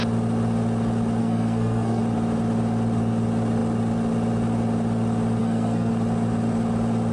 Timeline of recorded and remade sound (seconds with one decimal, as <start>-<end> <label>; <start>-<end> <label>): 0.0-1.2 recorded; 1.2-2.0 remade; 2.0-5.4 recorded; 5.4-5.9 remade; 5.9-7.1 recorded